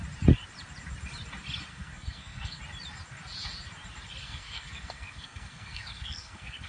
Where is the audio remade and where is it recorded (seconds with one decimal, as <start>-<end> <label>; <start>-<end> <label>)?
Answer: 0.0-1.7 recorded; 1.7-2.6 remade; 2.6-4.2 recorded; 4.2-6.7 remade